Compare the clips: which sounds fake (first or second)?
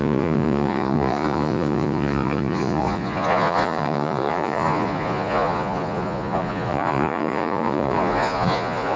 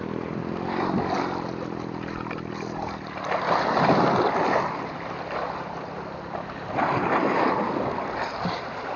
first